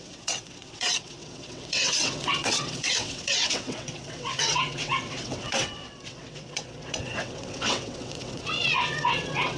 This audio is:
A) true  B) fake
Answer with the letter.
B